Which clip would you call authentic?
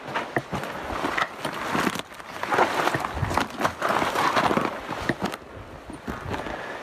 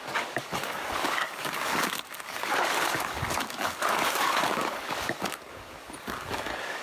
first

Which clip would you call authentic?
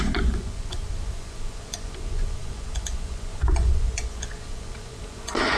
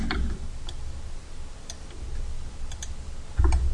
second